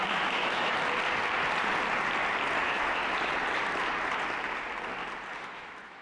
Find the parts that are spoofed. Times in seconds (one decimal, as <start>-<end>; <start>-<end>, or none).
0.0-0.7; 2.6-3.0; 5.4-6.0